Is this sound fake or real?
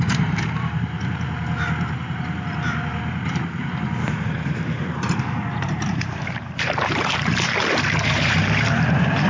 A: fake